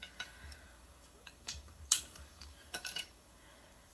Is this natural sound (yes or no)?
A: no